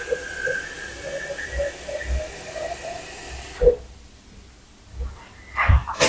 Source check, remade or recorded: recorded